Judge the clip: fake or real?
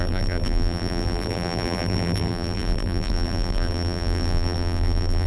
fake